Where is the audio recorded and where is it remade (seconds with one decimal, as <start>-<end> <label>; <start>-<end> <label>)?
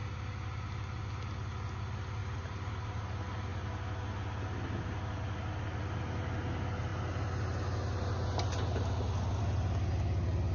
0.0-2.2 recorded; 2.2-3.0 remade; 3.0-10.5 recorded